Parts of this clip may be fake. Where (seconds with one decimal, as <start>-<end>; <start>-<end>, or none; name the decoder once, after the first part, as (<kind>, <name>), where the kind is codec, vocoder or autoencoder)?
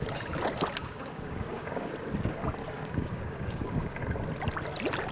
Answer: 0.8-1.9 (codec, DAC); 2.6-4.0